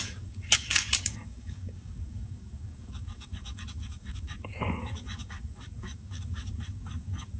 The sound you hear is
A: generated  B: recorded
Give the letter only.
A